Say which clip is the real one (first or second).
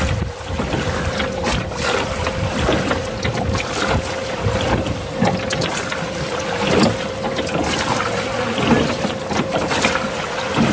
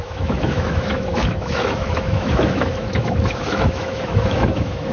first